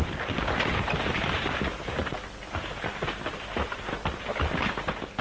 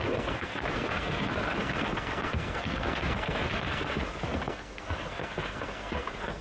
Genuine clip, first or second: first